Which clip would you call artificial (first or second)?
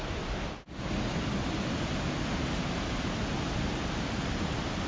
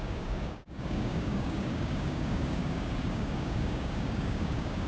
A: second